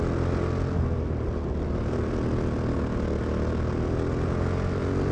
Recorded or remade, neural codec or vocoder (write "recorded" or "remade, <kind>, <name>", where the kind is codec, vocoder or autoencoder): recorded